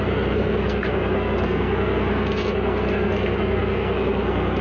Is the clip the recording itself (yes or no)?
no